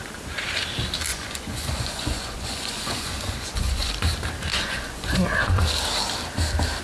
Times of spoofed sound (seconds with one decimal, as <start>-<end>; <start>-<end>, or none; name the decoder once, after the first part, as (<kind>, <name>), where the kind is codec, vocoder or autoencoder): 1.1-3.9 (vocoder, Vocos); 4.5-5.6